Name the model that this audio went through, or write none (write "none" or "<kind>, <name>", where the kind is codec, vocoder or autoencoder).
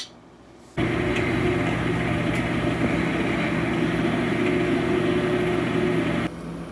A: none